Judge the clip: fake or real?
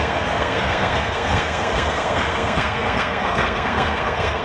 fake